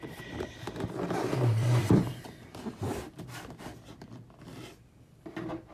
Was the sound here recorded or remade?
remade